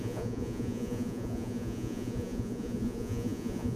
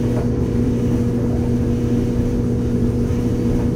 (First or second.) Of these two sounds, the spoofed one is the first